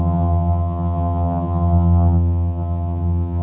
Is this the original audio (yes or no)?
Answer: no